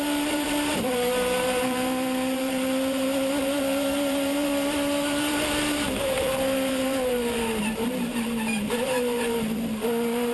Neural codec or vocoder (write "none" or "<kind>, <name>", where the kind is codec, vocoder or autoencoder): vocoder, BigVGAN v2